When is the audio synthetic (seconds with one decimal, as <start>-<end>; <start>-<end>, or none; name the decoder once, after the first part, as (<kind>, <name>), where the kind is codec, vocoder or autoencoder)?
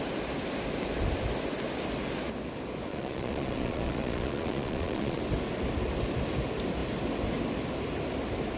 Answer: 2.9-5.2 (vocoder, Vocos)